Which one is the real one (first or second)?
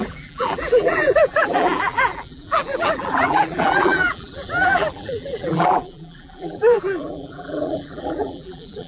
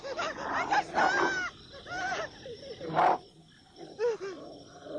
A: second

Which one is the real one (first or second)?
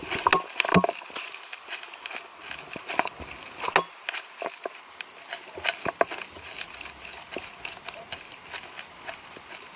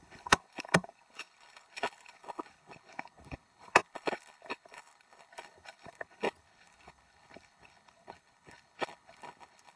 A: first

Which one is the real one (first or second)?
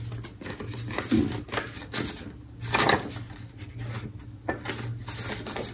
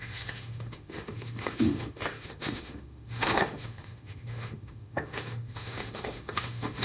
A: first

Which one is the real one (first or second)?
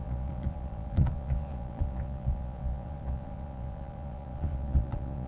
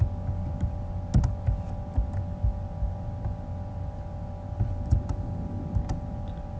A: second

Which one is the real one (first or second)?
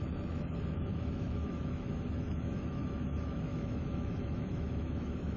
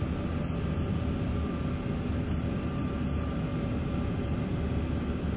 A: second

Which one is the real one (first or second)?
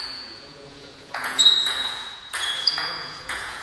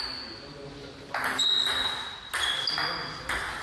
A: second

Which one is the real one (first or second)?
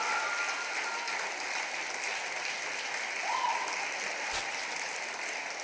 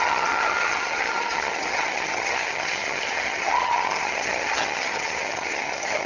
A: first